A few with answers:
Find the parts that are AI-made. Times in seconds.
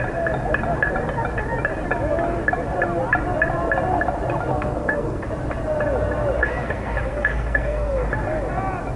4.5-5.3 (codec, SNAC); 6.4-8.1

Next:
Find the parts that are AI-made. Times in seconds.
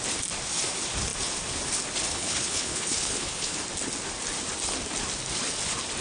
2.1-3.6 (codec, HILCodec)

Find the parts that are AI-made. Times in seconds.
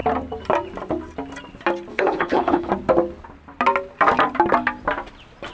1.9-2.7 (codec, HILCodec)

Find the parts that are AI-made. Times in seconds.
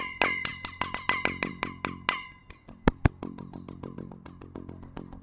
none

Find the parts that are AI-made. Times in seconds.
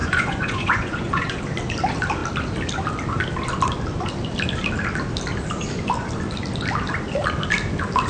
0.0-1.4 (vocoder, Vocos)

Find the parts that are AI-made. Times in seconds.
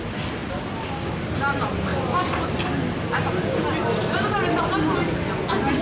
none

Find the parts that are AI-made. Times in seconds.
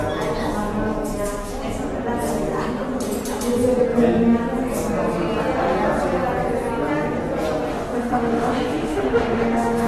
7.7-9.9 (autoencoder, DAC-VAE)